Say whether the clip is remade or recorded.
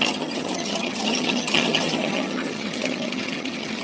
remade